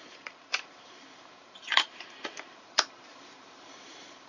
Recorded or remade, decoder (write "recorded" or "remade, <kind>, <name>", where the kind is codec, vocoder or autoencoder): remade, vocoder, BigVGAN v2